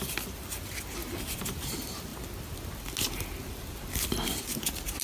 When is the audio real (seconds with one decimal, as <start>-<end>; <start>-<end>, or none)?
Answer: 0.0-5.0

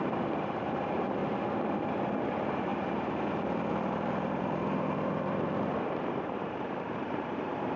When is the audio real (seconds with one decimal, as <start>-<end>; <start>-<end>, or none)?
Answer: 1.2-2.3; 2.7-3.7

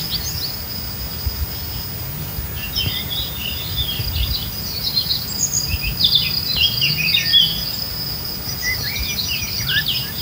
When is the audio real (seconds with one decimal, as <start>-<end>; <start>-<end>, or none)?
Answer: 0.0-10.2

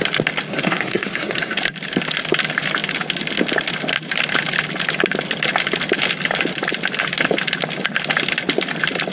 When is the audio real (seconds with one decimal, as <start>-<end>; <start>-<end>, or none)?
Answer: 0.0-0.5; 1.6-9.1

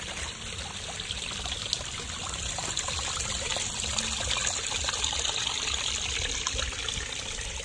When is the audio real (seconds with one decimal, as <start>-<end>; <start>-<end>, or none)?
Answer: 0.0-7.6

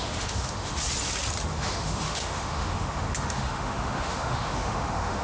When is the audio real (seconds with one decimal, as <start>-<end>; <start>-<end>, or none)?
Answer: 0.7-1.5